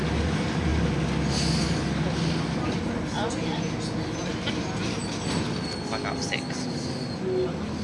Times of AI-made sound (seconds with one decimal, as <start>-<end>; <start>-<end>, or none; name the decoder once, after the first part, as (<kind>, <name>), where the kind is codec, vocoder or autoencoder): none

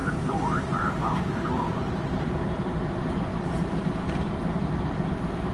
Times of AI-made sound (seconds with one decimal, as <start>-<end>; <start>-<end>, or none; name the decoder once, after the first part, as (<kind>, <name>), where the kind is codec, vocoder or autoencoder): 0.0-5.5 (vocoder, BigVGAN v2)

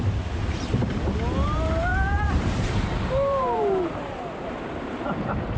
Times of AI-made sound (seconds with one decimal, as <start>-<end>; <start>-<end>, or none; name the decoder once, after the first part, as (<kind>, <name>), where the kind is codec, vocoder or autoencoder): 1.9-5.6 (vocoder, BigVGAN v2)